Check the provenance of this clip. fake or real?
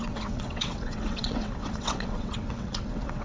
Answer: fake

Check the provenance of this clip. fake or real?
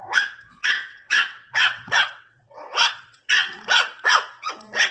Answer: fake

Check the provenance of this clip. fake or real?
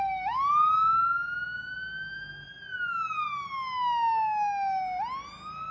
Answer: real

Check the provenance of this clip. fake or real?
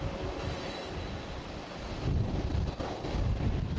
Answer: real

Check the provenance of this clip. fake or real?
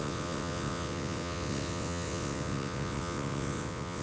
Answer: fake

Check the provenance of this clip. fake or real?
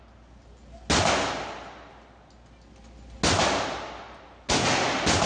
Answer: real